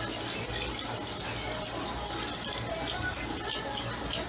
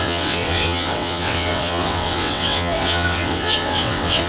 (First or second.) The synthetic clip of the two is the second